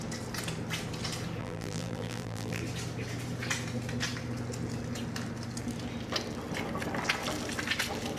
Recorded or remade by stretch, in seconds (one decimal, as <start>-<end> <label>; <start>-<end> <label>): 0.0-1.4 recorded; 1.4-2.6 remade; 2.6-8.2 recorded